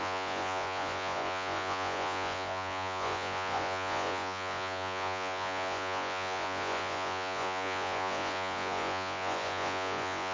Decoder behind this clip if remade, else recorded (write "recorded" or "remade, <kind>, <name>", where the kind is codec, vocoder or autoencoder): remade, vocoder, Vocos